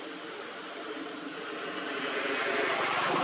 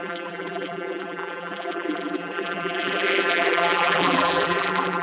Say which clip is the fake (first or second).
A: second